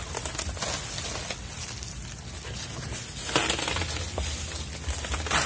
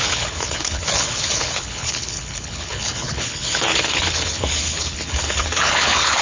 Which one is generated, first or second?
second